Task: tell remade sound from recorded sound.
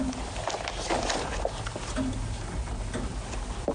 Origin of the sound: recorded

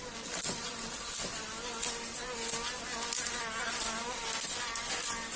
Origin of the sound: recorded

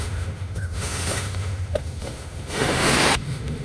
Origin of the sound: remade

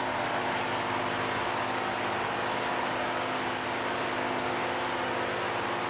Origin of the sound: recorded